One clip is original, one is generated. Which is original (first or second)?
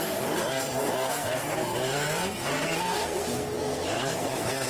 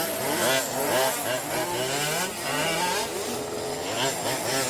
second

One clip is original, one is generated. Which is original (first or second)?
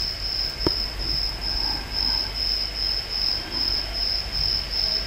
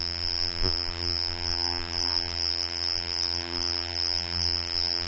first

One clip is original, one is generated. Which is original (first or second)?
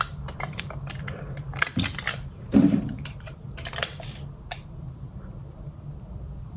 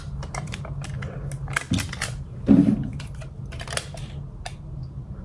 second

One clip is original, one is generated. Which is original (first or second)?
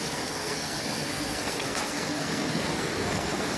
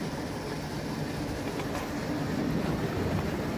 second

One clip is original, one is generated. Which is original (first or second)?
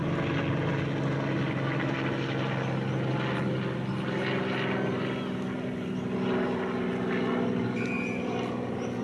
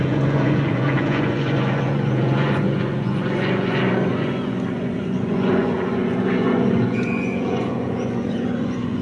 first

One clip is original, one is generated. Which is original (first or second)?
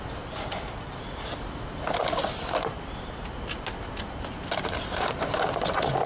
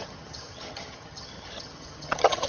first